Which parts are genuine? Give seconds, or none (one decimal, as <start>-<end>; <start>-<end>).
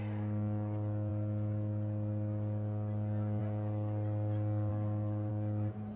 0.0-4.7; 5.3-6.0